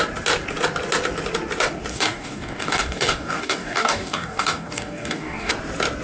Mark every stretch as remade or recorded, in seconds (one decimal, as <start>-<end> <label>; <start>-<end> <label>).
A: 0.0-1.9 recorded; 1.9-5.5 remade; 5.5-6.0 recorded